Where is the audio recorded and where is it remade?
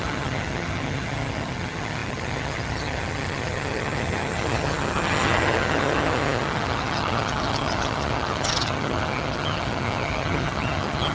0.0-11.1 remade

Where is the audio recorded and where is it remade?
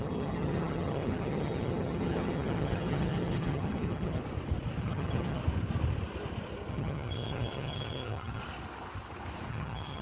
0.0-4.2 remade; 4.2-4.8 recorded; 4.8-5.4 remade; 5.4-6.7 recorded; 6.7-8.4 remade; 8.4-9.5 recorded; 9.5-10.0 remade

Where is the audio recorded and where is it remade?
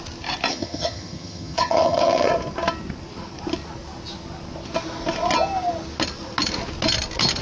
0.0-0.5 recorded; 0.5-2.3 remade; 2.3-7.4 recorded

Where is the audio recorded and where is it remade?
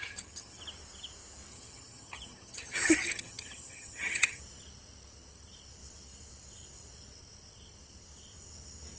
0.0-0.6 remade; 0.6-1.5 recorded; 1.5-4.4 remade; 4.4-9.0 recorded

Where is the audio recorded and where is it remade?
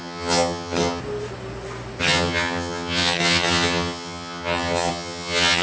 0.0-1.0 remade; 1.0-2.0 recorded; 2.0-5.6 remade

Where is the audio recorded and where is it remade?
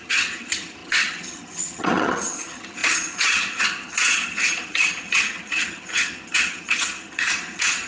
0.0-7.9 remade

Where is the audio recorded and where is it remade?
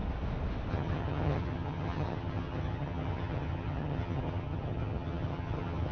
0.0-0.7 recorded; 0.7-5.9 remade